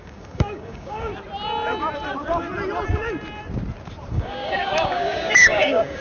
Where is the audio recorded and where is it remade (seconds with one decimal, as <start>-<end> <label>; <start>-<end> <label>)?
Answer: 0.0-1.1 remade; 1.1-4.1 recorded; 4.1-6.0 remade